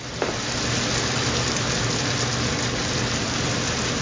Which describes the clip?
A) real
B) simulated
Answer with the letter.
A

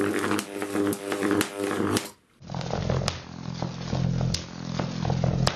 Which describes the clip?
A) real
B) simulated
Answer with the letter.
A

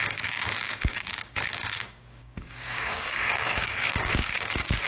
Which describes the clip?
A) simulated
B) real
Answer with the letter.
A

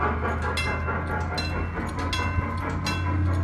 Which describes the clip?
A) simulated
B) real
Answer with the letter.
B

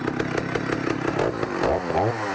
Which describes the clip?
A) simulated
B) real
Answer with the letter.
B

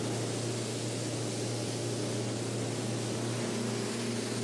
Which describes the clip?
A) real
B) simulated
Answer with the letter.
A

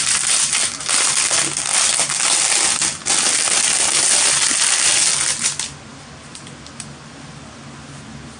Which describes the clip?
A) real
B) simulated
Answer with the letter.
A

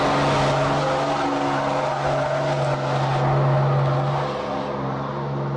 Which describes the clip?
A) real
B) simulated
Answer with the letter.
A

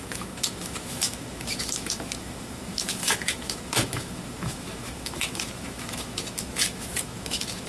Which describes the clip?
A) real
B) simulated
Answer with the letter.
B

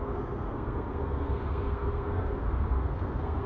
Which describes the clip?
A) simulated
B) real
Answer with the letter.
A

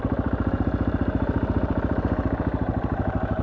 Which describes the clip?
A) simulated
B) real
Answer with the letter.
A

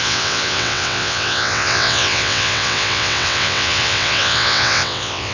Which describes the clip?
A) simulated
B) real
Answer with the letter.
A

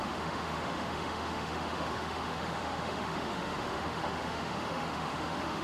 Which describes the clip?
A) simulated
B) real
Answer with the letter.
A